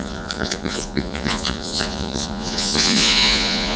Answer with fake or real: fake